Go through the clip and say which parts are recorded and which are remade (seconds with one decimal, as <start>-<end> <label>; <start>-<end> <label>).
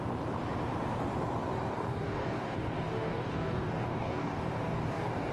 0.0-1.7 recorded; 1.7-5.3 remade